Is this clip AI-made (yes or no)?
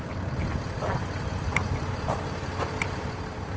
no